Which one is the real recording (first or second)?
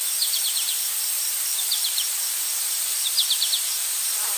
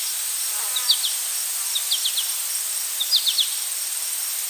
second